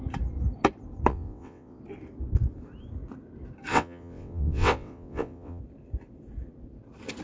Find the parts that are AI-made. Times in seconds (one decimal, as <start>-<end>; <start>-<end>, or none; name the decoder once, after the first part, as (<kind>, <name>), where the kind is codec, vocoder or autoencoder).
1.1-1.8 (vocoder, WaveNeXt); 3.7-5.6

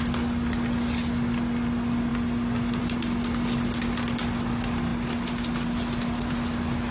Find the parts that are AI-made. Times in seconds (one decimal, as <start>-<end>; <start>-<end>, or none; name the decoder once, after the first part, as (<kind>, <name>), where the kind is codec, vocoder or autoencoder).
none